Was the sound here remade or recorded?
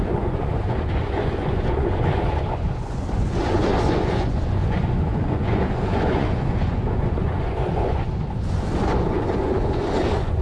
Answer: remade